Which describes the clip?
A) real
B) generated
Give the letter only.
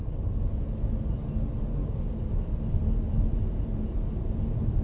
A